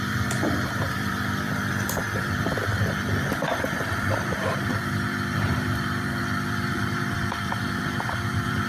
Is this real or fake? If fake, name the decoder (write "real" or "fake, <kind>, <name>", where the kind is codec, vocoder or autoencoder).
fake, vocoder, BigVGAN v2